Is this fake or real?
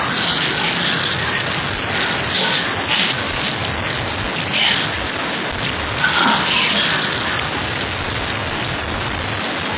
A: real